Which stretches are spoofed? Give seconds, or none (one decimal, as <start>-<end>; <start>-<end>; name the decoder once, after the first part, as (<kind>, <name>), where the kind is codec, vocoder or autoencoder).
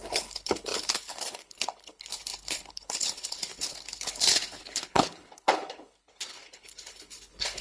0.0-7.6 (codec, HILCodec)